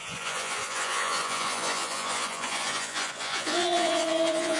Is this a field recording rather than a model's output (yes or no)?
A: no